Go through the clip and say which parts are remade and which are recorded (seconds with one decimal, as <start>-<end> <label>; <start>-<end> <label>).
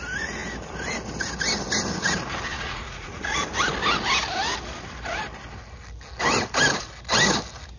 0.0-2.5 recorded; 2.5-3.5 remade; 3.5-7.8 recorded